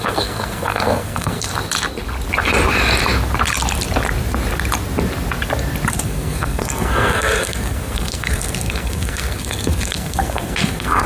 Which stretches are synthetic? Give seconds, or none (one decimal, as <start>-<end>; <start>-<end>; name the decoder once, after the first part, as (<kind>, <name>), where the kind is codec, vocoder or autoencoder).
0.0-1.5 (codec, SNAC); 5.9-11.1